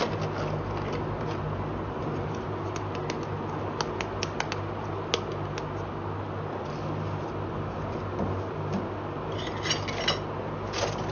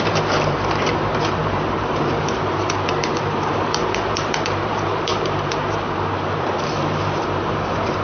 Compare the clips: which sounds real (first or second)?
first